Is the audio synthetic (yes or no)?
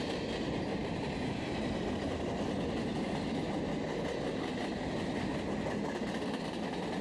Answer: no